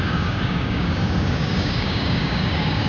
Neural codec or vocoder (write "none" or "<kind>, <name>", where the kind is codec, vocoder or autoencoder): codec, DAC